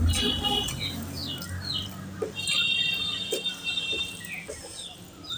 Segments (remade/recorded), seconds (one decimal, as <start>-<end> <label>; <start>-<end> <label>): 0.0-5.4 recorded

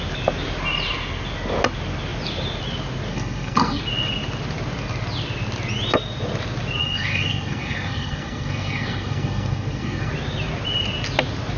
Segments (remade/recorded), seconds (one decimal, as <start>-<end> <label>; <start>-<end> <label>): 0.0-3.1 recorded; 3.1-3.8 remade; 3.8-6.8 recorded; 6.8-10.1 remade; 10.1-11.6 recorded

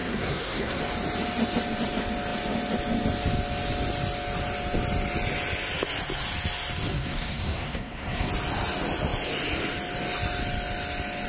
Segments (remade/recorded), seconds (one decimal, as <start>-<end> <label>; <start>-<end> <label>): 0.0-0.8 remade; 0.8-6.9 recorded; 6.9-8.3 remade; 8.3-11.3 recorded

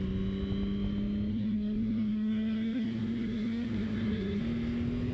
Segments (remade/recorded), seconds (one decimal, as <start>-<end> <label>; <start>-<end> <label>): 0.0-1.3 recorded; 1.3-4.4 remade; 4.4-5.1 recorded

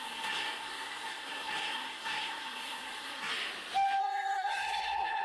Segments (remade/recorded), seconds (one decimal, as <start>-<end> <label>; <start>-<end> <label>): 0.0-3.3 remade; 3.3-4.0 recorded; 4.0-5.2 remade

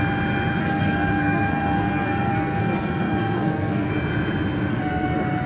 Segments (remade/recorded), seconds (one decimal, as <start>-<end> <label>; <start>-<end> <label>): 0.0-0.6 recorded; 0.6-3.9 remade; 3.9-4.7 recorded; 4.7-5.5 remade